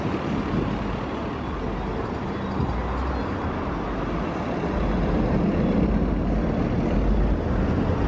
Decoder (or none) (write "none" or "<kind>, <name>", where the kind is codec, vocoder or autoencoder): none